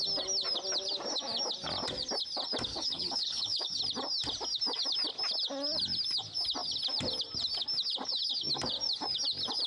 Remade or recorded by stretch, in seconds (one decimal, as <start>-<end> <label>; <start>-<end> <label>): 0.0-2.7 recorded; 2.7-3.8 remade; 3.8-9.7 recorded